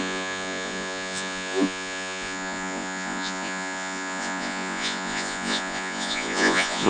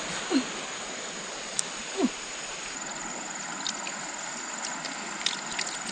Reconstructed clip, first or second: first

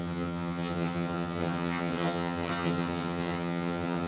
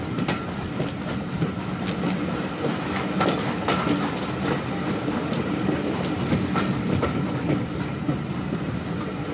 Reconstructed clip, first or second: first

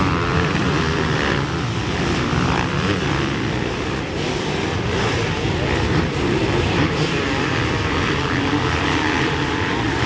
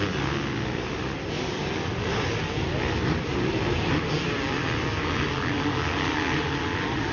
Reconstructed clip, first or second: first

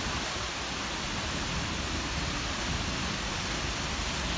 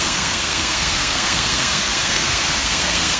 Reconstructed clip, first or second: second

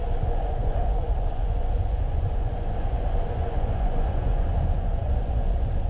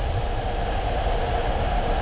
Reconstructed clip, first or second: first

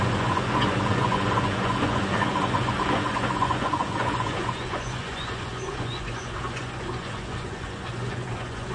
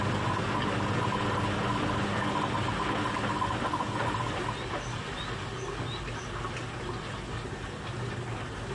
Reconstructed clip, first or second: first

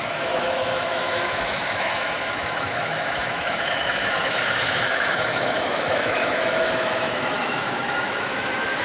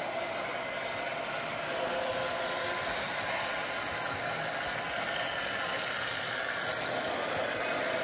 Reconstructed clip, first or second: first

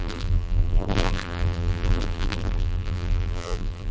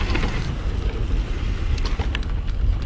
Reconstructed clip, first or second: first